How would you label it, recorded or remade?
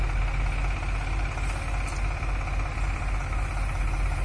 recorded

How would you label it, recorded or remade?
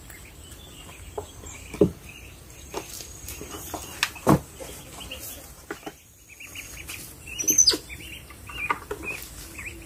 recorded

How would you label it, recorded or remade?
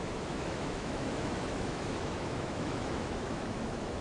remade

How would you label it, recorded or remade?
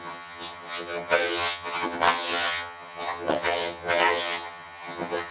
remade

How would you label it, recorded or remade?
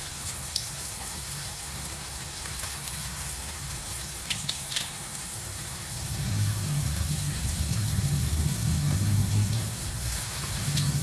remade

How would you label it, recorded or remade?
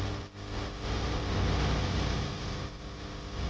recorded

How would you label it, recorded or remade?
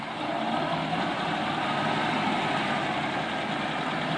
recorded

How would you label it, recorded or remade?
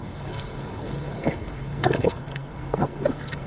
remade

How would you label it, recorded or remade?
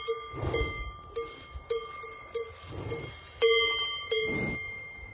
recorded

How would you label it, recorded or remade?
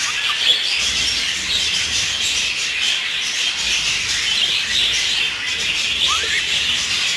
recorded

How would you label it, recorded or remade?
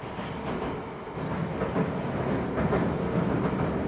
recorded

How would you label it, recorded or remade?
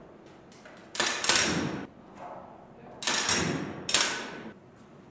recorded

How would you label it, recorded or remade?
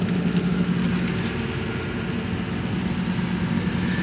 recorded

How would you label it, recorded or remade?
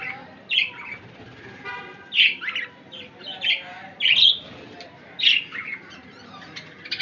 recorded